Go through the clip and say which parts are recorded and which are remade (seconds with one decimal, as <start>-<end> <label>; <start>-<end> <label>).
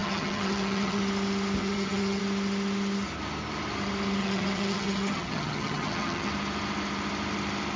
0.0-1.0 remade; 1.0-1.6 recorded; 1.6-2.2 remade; 2.2-4.2 recorded; 4.2-6.3 remade; 6.3-7.8 recorded